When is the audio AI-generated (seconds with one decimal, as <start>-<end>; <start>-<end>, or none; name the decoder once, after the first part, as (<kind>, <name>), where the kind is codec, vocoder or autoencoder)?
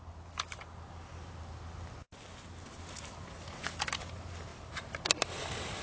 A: none